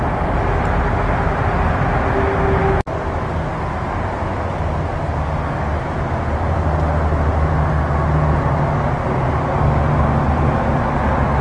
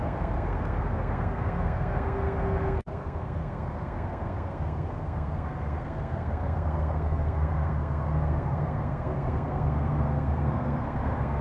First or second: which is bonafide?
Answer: first